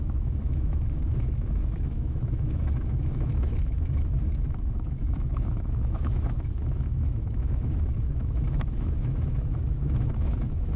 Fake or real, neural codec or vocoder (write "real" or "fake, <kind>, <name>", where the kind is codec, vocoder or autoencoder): fake, autoencoder, DAC-VAE